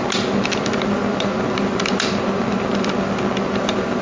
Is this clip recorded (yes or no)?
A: yes